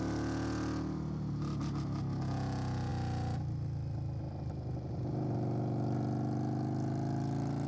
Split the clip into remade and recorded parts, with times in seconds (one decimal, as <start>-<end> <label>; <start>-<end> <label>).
0.0-7.7 recorded